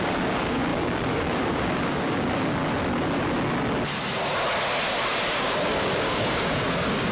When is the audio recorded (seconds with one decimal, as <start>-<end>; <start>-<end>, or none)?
2.6-5.4